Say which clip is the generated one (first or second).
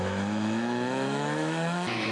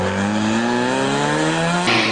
first